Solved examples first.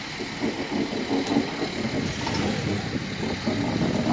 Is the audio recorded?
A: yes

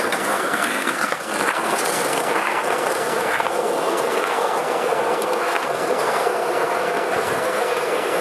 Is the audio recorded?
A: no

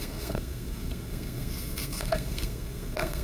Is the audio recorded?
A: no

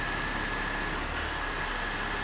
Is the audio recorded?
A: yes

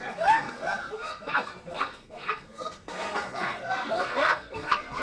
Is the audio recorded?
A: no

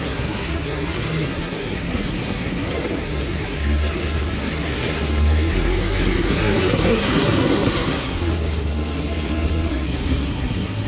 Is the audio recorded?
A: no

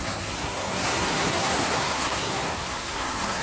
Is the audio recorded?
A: no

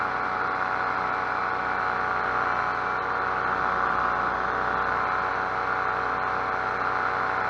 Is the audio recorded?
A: yes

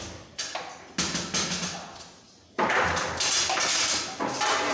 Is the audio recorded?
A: yes